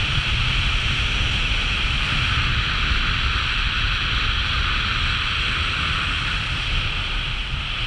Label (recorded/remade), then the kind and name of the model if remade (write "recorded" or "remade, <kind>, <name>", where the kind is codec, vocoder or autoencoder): recorded